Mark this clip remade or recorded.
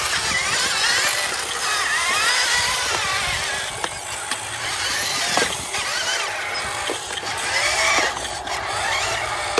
recorded